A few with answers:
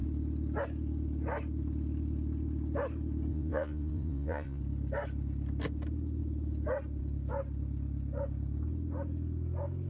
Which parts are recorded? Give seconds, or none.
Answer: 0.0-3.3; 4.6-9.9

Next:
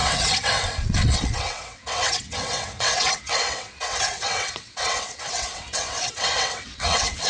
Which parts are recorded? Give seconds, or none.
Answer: none

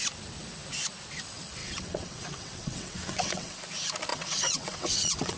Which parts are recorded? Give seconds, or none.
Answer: 0.0-1.6; 3.6-4.1

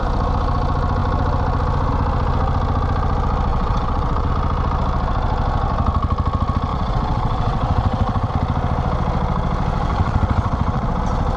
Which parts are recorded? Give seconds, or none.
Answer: 0.0-3.5; 4.3-6.7; 8.3-9.9; 10.9-11.4

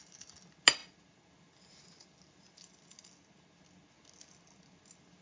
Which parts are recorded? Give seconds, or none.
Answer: 0.0-5.2

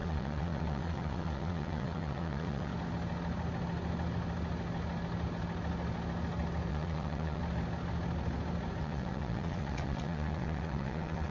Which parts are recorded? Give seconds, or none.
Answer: 2.7-6.7; 7.4-8.8

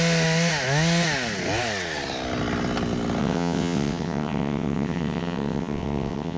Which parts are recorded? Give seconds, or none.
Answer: 0.0-3.2

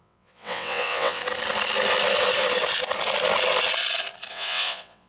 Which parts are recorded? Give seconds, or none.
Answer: 1.2-4.3